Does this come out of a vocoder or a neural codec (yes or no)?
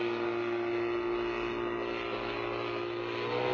no